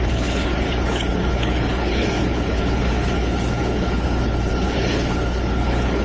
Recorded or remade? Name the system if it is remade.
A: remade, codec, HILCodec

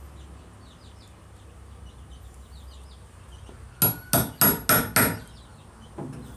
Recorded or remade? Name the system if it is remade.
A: recorded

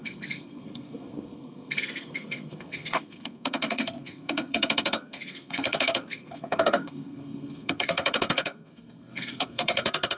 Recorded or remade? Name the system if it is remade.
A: remade, codec, SNAC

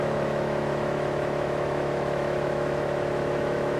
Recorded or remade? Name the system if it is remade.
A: remade, autoencoder, DAC-VAE